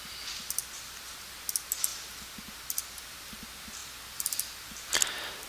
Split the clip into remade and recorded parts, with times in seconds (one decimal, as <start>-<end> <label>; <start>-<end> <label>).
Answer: 0.0-3.8 recorded; 3.8-4.8 remade; 4.8-5.5 recorded